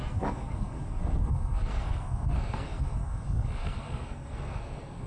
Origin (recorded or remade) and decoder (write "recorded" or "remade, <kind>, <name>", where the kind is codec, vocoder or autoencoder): remade, codec, SNAC